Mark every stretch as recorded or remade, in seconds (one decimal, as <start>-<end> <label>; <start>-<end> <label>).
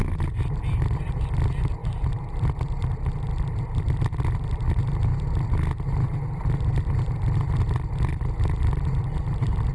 0.0-9.7 recorded